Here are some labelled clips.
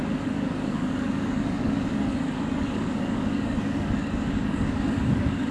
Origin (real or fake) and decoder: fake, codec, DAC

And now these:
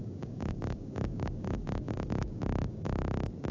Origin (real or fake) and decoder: fake, codec, DAC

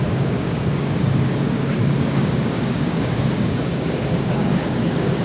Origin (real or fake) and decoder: fake, codec, DAC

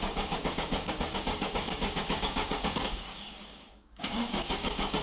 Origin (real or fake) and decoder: fake, codec, DAC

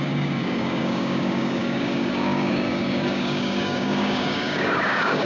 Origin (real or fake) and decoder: fake, codec, DAC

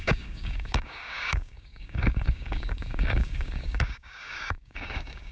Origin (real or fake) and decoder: fake, codec, DAC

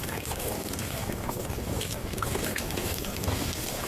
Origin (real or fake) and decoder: fake, codec, DAC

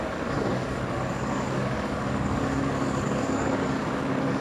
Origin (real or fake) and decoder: fake, codec, DAC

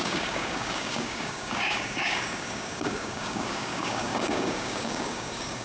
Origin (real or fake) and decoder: fake, codec, DAC